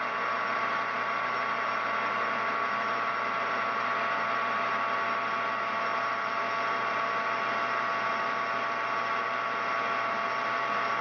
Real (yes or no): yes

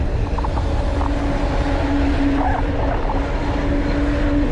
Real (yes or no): yes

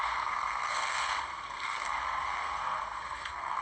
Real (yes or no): no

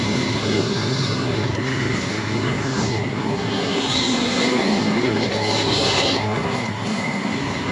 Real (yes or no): no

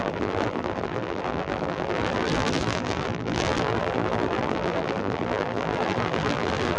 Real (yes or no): no